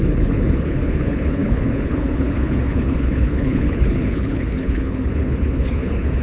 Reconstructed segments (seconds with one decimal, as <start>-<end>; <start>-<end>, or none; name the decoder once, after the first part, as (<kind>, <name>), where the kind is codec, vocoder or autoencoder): 0.0-6.2 (codec, HILCodec)

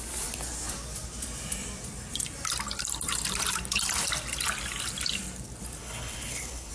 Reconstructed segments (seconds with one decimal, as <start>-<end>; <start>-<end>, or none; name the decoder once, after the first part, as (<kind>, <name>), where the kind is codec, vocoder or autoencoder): 5.8-6.7 (codec, HILCodec)

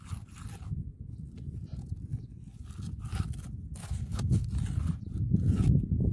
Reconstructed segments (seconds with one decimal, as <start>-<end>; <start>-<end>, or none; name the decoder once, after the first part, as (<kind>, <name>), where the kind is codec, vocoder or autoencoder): 3.8-4.5 (codec, HILCodec)

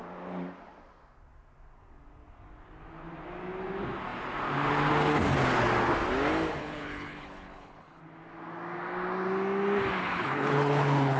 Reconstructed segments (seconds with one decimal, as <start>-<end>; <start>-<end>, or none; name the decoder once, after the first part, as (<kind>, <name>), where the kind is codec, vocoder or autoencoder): 6.6-8.0 (codec, HILCodec); 10.0-11.2

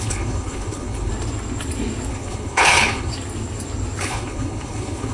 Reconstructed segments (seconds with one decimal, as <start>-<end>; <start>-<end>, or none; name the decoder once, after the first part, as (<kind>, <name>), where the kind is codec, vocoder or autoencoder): 0.0-1.1 (codec, HILCodec); 2.1-3.1; 4.0-5.1

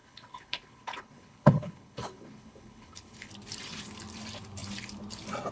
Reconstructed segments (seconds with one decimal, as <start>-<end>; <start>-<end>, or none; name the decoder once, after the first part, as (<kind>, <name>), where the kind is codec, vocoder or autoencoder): 0.0-3.3 (codec, HILCodec)

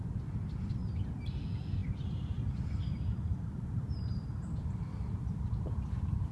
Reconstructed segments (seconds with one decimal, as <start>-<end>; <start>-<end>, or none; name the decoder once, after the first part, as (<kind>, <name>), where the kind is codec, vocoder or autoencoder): none